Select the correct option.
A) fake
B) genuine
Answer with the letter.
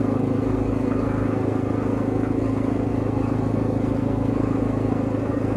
A